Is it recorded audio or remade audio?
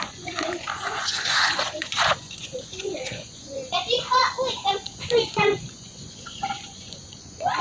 remade